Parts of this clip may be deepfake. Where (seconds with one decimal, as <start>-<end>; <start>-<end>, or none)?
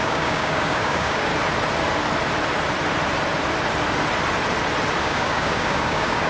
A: 0.0-1.3; 5.0-6.3